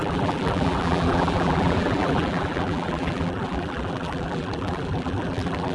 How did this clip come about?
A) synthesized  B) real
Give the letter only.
A